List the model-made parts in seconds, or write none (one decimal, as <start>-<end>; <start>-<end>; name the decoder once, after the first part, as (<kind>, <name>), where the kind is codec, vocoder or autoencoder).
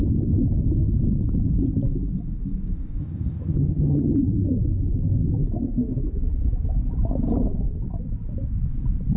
3.0-4.1 (vocoder, HiFi-GAN)